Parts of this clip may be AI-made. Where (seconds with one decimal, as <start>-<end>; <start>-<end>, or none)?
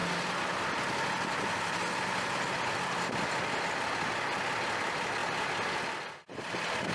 none